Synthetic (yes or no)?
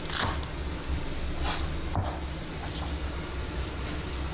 no